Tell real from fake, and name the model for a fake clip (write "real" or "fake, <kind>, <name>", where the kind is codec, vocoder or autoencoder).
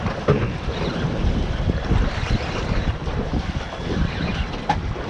real